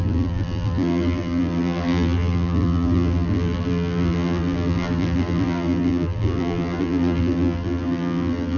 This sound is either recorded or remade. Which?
remade